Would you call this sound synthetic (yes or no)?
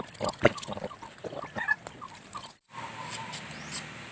no